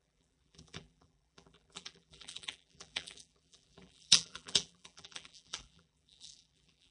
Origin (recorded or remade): remade